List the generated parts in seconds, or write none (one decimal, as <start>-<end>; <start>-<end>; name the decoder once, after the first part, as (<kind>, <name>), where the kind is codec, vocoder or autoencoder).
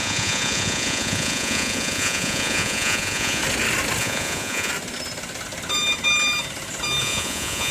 0.0-3.4 (vocoder, Vocos); 4.0-4.7; 7.0-7.7